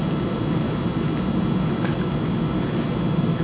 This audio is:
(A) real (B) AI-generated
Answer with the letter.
A